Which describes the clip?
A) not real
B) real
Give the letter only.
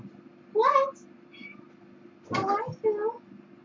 B